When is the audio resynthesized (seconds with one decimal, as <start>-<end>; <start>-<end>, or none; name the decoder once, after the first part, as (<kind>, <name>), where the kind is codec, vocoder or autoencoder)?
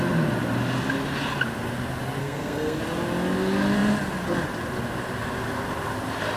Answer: 2.2-2.8 (codec, SNAC)